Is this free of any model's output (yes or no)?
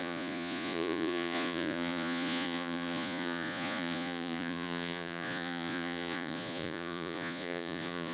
no